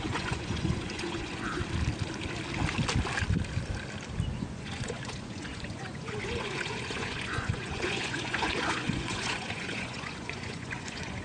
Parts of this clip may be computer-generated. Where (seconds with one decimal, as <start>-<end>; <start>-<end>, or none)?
0.0-1.6; 4.3-11.2